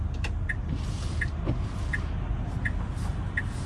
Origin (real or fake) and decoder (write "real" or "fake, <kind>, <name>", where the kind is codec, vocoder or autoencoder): real